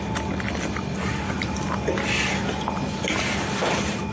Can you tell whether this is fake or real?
real